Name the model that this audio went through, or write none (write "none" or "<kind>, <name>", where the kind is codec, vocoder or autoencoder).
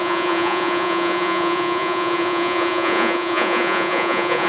vocoder, Vocos